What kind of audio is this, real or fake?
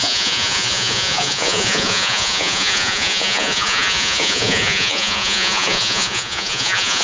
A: fake